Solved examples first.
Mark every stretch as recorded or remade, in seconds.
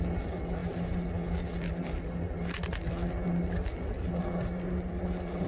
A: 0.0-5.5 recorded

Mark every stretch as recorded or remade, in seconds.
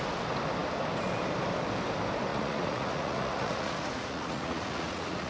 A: 0.0-2.3 recorded; 2.3-5.3 remade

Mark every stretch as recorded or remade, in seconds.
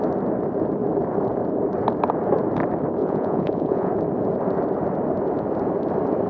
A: 0.0-3.0 recorded; 3.0-3.9 remade; 3.9-6.3 recorded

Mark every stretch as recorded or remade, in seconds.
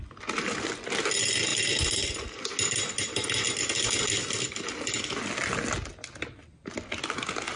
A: 0.0-7.6 recorded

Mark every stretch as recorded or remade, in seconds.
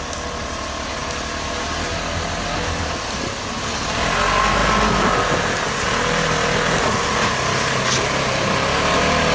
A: 0.0-9.3 recorded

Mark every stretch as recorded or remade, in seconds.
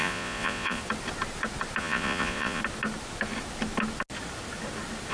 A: 0.0-0.8 remade; 0.8-1.8 recorded; 1.8-2.6 remade; 2.6-5.1 recorded